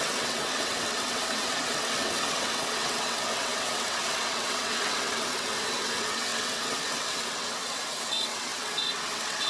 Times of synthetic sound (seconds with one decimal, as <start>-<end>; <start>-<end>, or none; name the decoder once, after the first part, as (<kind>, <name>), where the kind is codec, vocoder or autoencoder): 0.0-9.5 (vocoder, WaveNeXt)